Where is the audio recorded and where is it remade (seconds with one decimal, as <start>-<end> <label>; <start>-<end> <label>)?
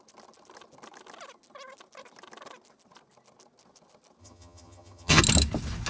0.0-4.2 recorded; 4.2-5.2 remade; 5.2-5.9 recorded